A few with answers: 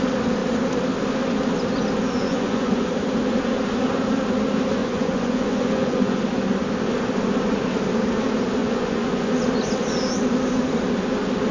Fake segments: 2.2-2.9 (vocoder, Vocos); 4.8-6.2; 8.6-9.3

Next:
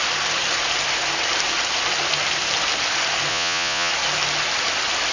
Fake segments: 3.3-3.9 (vocoder, Vocos)

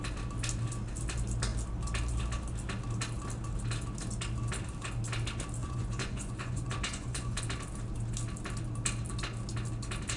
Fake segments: 5.6-7.4 (vocoder, Vocos)

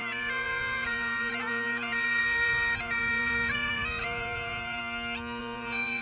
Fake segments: 0.0-4.8 (vocoder, Vocos); 5.4-6.0

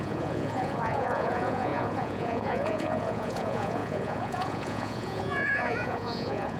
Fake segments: 0.0-6.6 (vocoder, Vocos)

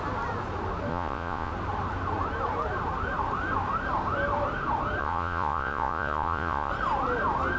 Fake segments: 0.9-1.5 (vocoder, Vocos); 5.0-6.7

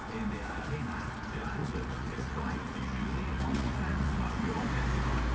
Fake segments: 1.6-4.6 (vocoder, Vocos)